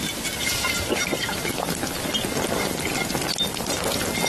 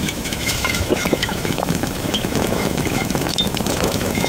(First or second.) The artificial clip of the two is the second